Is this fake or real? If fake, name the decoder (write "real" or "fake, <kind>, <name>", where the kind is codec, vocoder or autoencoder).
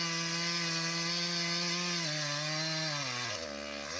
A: real